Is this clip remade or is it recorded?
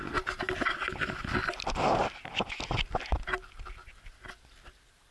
recorded